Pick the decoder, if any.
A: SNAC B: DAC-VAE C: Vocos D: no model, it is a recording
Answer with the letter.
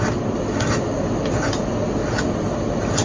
D